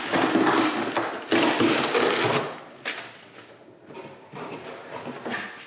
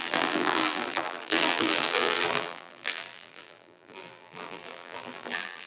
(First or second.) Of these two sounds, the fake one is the second